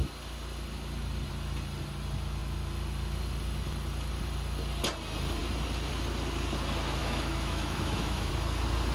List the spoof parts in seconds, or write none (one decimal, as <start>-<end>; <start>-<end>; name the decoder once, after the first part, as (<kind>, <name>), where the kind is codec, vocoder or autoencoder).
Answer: 7.0-8.3 (autoencoder, DAC-VAE)